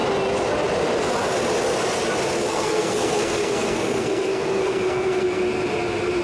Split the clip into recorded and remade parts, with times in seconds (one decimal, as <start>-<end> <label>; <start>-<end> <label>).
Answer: 0.0-2.5 recorded; 2.5-5.4 remade; 5.4-6.2 recorded